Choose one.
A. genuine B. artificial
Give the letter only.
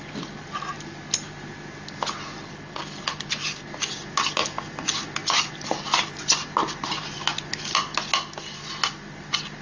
A